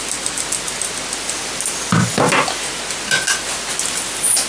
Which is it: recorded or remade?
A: recorded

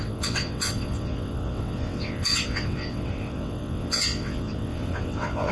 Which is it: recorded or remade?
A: remade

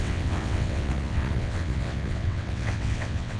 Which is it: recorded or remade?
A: remade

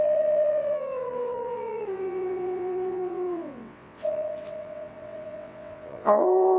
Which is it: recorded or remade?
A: remade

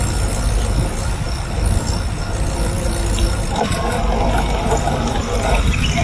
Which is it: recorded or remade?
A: recorded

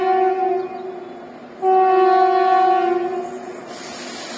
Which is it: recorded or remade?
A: recorded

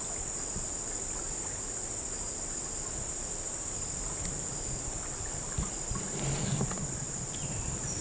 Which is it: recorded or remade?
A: recorded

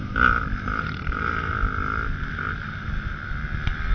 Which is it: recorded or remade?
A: recorded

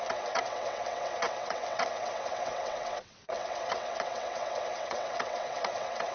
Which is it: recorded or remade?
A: remade